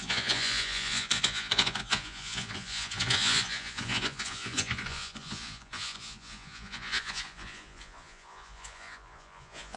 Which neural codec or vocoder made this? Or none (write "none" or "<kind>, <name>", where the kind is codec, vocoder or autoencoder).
vocoder, Vocos